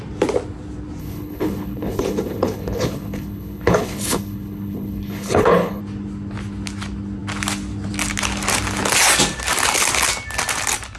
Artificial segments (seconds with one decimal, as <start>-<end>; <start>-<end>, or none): 1.0-5.8

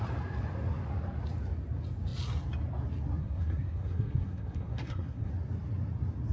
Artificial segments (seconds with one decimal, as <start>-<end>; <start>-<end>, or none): 3.2-5.3